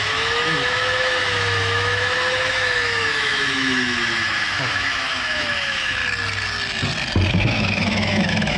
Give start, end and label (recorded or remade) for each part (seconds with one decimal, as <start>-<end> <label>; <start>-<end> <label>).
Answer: 0.0-6.0 remade; 6.0-7.3 recorded; 7.3-8.6 remade